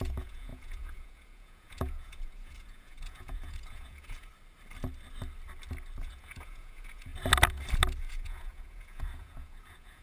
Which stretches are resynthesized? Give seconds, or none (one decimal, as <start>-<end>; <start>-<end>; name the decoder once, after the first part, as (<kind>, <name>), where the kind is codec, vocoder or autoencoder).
0.0-4.3 (vocoder, Vocos); 6.0-7.1; 8.1-10.0